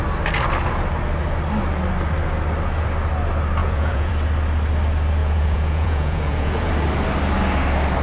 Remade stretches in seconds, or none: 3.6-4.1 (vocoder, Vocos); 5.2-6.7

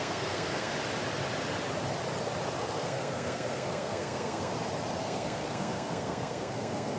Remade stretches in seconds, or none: 0.0-0.7 (codec, SNAC); 2.6-4.5; 5.0-7.0

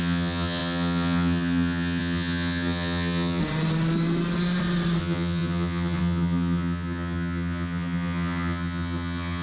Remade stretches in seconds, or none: 0.0-3.4 (vocoder, HiFi-GAN); 5.0-9.4

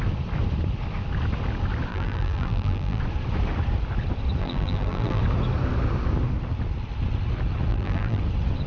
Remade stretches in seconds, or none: 1.9-3.0 (vocoder, BigVGAN v2); 4.4-5.2; 7.7-8.2

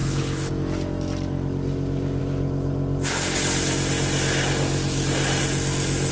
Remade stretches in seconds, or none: 0.0-0.5 (codec, HILCodec)

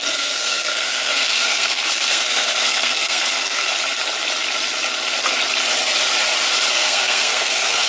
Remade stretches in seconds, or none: 0.0-3.7 (codec, SNAC); 6.7-7.9